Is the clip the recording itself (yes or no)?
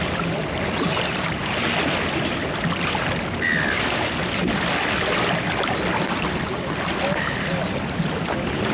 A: yes